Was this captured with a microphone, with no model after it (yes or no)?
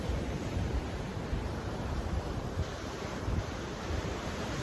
no